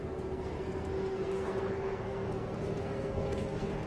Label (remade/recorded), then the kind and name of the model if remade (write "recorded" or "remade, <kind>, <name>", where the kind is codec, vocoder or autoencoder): remade, codec, SNAC